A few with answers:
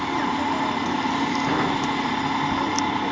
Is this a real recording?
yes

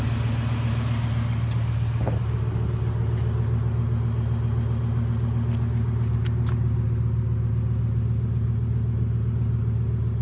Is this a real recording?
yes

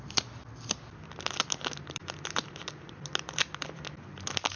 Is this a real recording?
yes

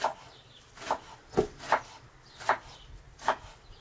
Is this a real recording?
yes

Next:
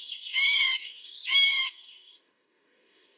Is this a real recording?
no